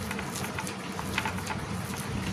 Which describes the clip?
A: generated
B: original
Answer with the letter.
B